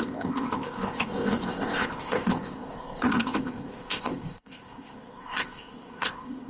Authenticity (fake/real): fake